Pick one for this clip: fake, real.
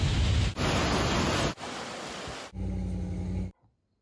real